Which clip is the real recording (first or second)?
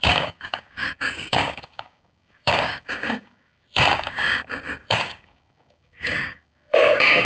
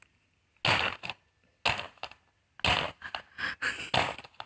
second